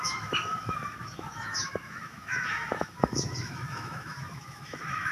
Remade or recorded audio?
remade